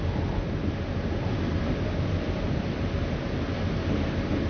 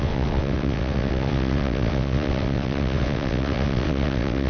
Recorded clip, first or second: first